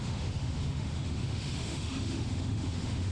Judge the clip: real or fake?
fake